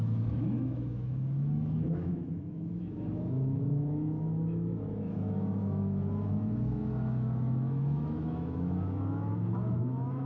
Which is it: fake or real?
fake